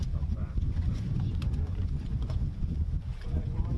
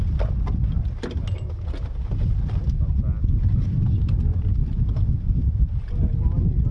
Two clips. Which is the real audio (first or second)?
second